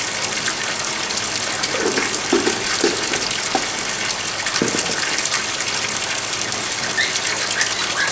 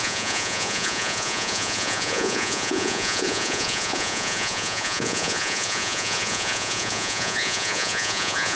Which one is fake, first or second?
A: second